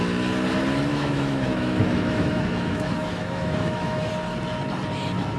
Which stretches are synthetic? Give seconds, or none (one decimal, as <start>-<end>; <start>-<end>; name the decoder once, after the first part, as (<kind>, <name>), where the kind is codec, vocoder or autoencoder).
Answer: 0.9-4.1 (autoencoder, DAC-VAE)